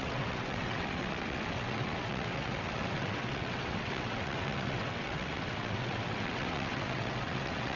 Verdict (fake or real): fake